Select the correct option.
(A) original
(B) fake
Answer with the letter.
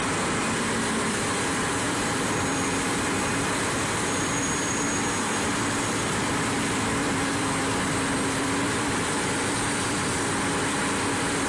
B